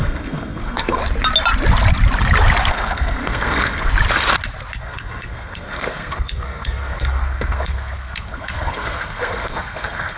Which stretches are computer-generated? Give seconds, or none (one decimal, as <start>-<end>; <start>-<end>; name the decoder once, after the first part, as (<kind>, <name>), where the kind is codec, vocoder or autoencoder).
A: 0.0-1.0 (codec, SNAC); 2.7-3.9; 4.8-10.2